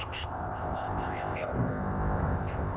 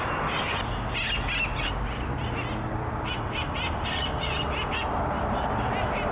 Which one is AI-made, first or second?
first